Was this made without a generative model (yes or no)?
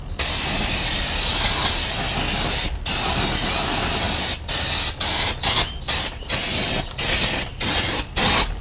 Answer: yes